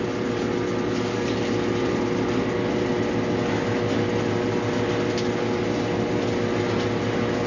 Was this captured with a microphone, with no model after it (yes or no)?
yes